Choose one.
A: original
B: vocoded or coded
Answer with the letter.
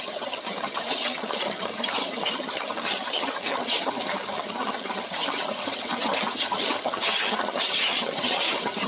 B